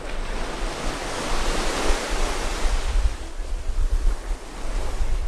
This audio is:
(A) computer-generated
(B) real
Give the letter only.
B